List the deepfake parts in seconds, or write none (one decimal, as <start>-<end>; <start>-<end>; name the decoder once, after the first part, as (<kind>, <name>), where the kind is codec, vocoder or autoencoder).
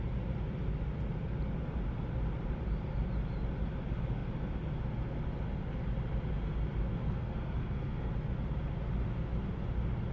6.9-8.1 (codec, SNAC)